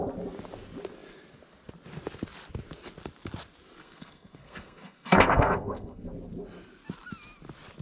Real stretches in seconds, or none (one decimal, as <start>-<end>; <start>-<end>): 0.0-3.8; 6.1-7.8